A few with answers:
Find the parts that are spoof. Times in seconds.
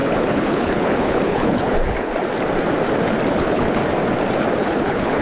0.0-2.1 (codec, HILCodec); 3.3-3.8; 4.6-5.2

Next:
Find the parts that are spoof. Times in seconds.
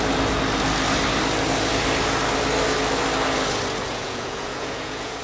3.9-5.2 (vocoder, Vocos)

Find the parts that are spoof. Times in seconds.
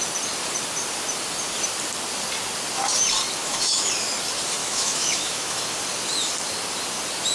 3.4-3.9 (autoencoder, DAC-VAE); 4.6-5.6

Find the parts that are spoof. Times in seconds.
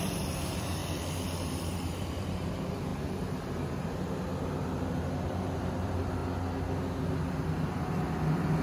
0.0-0.8 (vocoder, BigVGAN v2); 1.4-4.3; 4.9-6.2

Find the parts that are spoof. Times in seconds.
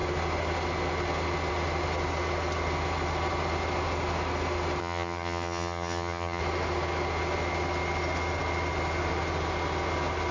4.8-6.4 (vocoder, HiFi-GAN)